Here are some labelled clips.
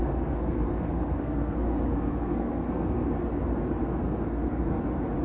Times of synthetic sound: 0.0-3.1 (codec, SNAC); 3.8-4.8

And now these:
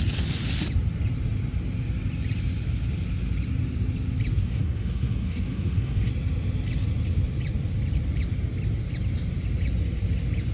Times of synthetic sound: 4.4-6.1 (codec, SNAC)

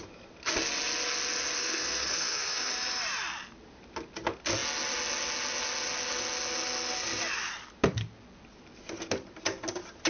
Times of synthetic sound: 1.6-2.7 (codec, SNAC)

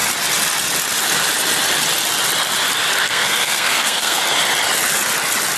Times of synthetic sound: 3.0-4.2 (codec, SNAC)

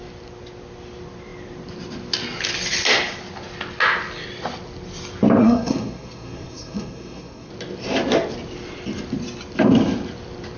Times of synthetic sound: 5.4-7.5 (codec, SNAC)

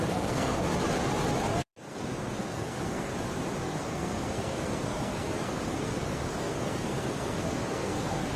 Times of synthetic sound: 0.0-0.7 (codec, SNAC); 1.6-3.1; 3.6-8.4